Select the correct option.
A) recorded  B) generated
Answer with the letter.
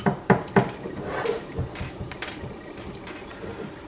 B